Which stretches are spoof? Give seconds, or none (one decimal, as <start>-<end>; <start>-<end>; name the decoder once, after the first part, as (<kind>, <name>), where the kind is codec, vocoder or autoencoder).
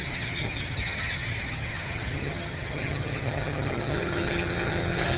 0.0-5.2 (vocoder, HiFi-GAN)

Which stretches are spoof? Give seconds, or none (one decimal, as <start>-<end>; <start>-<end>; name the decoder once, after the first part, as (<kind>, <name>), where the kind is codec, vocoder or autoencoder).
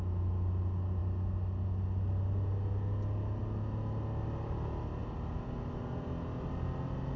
none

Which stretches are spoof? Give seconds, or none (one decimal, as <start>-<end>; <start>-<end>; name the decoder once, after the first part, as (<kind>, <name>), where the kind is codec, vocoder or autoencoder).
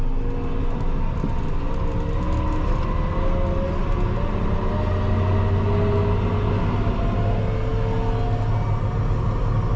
none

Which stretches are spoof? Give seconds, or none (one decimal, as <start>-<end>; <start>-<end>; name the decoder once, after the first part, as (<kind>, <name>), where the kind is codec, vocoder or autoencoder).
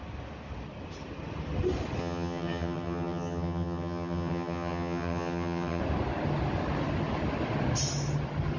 2.0-5.8 (vocoder, HiFi-GAN)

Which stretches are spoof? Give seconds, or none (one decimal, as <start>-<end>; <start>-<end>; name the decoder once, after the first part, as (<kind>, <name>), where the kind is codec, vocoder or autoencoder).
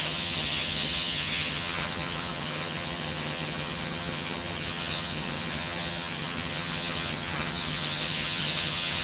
0.0-9.0 (vocoder, HiFi-GAN)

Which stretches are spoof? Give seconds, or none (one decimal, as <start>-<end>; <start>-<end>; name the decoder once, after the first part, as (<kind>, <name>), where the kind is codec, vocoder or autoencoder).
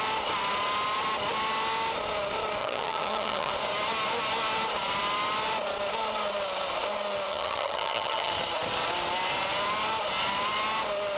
2.6-3.5 (vocoder, HiFi-GAN); 7.3-8.3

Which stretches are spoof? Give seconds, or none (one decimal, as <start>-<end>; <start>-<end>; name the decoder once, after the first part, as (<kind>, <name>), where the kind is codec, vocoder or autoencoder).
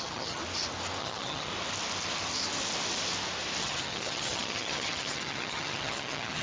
0.0-0.4 (vocoder, HiFi-GAN); 1.0-1.5; 3.6-6.4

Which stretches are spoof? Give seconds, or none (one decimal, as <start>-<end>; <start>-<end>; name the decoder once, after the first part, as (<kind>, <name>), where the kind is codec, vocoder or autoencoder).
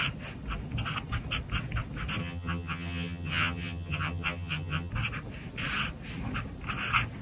2.2-4.9 (vocoder, HiFi-GAN)